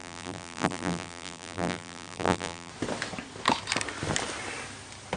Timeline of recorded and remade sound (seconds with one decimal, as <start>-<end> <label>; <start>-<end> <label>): 0.0-2.7 remade; 2.7-5.2 recorded